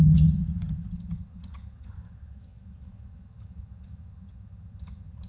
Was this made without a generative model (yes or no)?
no